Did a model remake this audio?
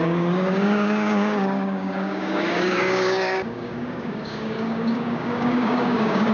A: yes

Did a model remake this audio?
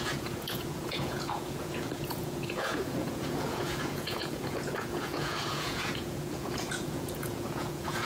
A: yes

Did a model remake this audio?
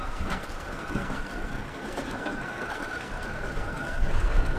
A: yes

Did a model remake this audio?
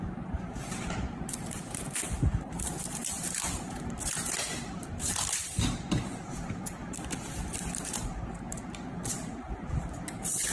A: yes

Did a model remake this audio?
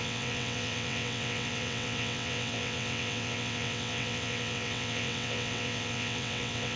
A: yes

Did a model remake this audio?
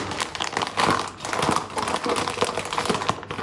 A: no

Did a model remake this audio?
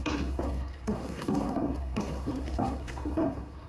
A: yes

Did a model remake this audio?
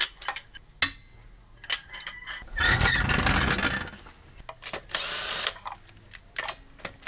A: no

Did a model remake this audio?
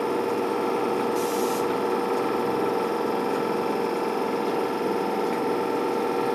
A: no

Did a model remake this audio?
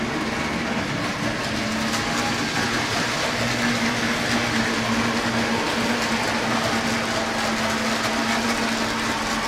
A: no